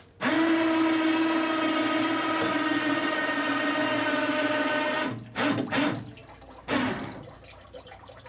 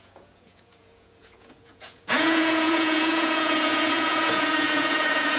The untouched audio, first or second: first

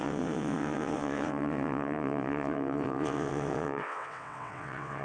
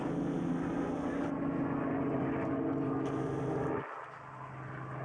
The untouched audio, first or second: second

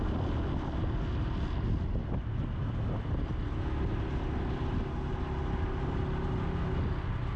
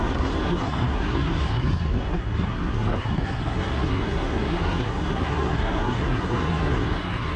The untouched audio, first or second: first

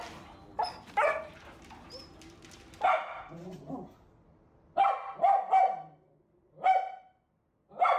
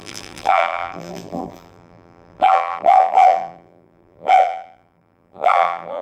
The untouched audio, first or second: first